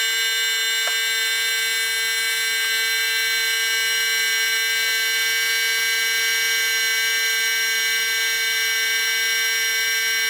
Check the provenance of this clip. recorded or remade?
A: recorded